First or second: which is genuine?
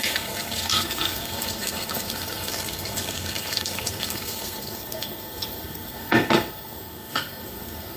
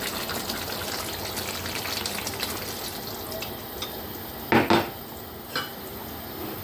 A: second